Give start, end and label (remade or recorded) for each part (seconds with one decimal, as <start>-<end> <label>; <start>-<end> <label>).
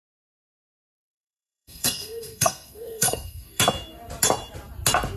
0.0-0.5 recorded; 0.5-3.6 remade; 3.6-5.2 recorded